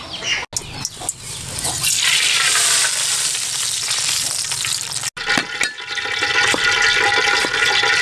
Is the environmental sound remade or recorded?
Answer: recorded